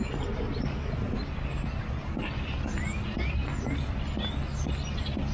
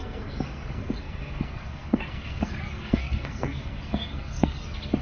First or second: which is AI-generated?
second